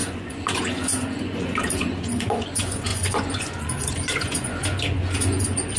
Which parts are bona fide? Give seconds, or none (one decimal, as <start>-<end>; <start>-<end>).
none